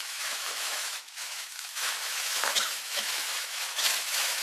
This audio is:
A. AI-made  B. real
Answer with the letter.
A